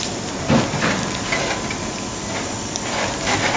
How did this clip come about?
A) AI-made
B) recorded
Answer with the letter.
B